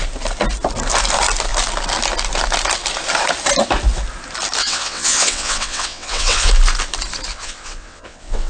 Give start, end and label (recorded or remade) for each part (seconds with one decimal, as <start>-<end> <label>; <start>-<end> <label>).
0.0-4.6 recorded; 4.6-6.5 remade; 6.5-7.3 recorded; 7.3-8.5 remade